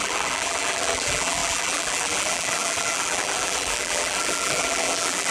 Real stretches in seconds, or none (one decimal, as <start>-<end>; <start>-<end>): none